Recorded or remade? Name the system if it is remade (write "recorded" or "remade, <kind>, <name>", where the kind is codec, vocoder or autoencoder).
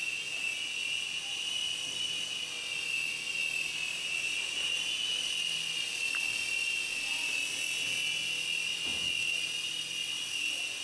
recorded